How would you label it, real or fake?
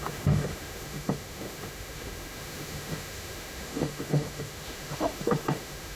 fake